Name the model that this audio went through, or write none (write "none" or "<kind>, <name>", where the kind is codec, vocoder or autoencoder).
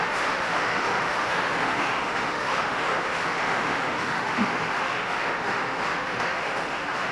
autoencoder, DAC-VAE